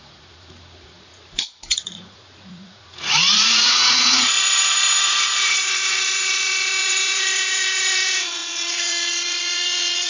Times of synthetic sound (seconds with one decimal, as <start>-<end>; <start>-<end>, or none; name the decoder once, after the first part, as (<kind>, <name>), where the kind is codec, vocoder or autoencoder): 0.0-10.1 (vocoder, Vocos)

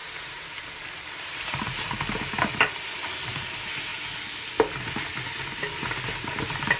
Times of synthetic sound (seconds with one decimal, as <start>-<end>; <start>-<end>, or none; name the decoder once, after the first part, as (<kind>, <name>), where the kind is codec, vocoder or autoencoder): 0.0-1.8 (vocoder, BigVGAN v2)

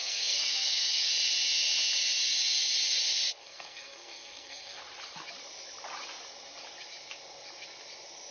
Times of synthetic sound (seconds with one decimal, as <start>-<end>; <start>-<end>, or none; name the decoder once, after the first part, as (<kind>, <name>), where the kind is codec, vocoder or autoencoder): 0.0-1.1 (codec, SNAC); 3.4-4.8

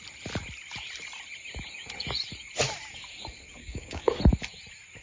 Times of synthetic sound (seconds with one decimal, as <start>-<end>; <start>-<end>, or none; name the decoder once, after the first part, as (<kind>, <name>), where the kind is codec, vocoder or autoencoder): 3.6-4.2 (codec, DAC)

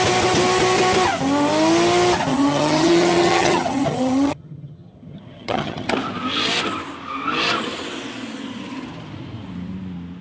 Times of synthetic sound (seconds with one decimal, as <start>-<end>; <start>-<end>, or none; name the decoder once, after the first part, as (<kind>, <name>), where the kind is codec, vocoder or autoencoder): 2.3-5.9 (vocoder, HiFi-GAN)